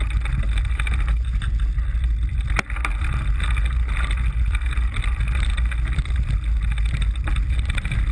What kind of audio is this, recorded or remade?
recorded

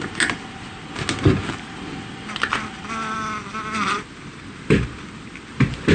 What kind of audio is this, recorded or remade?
recorded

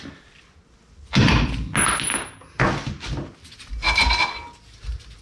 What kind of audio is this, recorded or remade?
recorded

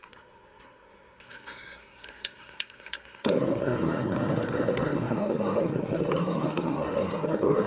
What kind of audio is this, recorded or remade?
remade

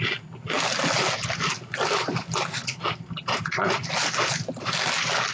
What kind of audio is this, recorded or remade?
recorded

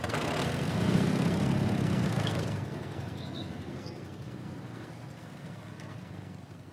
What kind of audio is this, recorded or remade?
remade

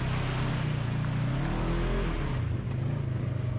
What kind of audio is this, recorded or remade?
recorded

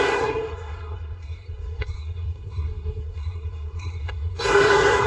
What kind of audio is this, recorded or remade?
remade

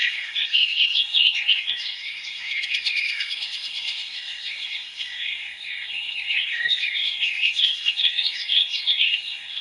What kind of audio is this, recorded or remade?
remade